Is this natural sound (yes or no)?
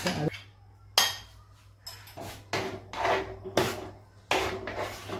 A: yes